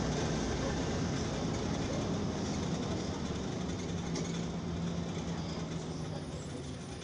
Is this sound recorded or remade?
recorded